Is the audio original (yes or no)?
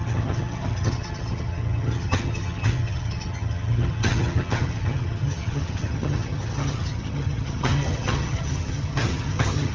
no